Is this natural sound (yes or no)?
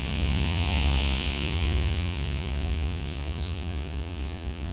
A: no